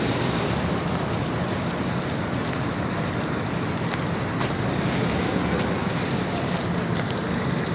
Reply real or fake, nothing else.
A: real